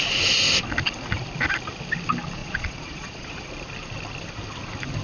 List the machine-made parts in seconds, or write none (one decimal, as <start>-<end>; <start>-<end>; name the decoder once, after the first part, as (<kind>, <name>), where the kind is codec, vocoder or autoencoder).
2.4-3.5 (vocoder, Vocos)